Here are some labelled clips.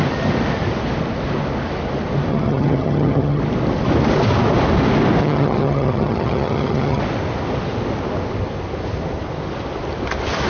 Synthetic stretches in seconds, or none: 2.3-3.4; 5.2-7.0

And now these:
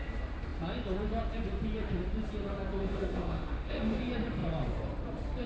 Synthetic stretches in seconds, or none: 2.8-4.0

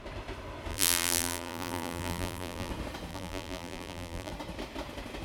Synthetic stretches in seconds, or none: 0.7-2.7; 3.1-4.3